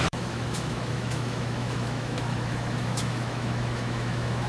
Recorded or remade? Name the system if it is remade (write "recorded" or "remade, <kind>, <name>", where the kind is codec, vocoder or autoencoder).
remade, autoencoder, DAC-VAE